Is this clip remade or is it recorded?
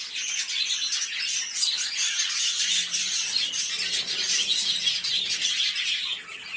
recorded